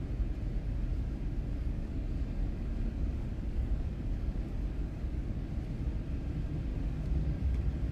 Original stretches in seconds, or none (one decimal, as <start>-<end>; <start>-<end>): 0.0-0.9; 5.5-6.7